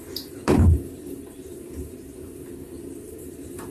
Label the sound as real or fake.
fake